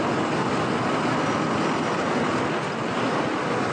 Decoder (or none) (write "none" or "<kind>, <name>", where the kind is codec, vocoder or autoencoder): none